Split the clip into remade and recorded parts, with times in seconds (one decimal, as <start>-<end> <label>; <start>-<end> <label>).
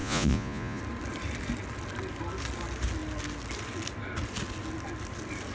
0.0-0.8 remade; 0.8-5.5 recorded